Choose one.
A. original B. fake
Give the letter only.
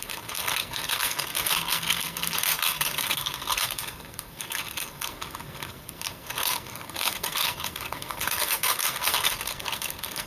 B